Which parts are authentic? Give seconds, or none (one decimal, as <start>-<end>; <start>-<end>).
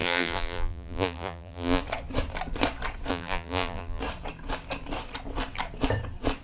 1.8-3.1; 4.0-6.4